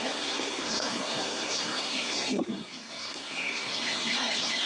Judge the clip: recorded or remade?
remade